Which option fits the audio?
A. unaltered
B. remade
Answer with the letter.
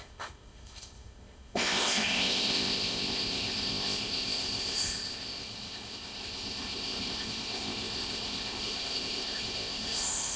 B